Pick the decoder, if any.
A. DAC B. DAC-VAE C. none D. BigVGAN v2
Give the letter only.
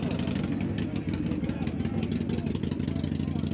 C